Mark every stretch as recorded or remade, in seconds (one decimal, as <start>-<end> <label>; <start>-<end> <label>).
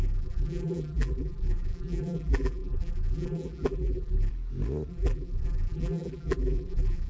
0.0-4.3 remade; 4.3-4.9 recorded; 4.9-7.1 remade